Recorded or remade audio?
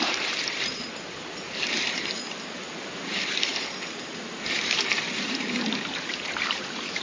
remade